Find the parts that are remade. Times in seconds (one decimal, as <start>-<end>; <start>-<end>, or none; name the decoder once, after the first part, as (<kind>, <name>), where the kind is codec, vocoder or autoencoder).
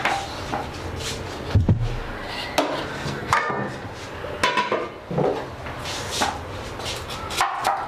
2.9-3.5 (codec, SNAC)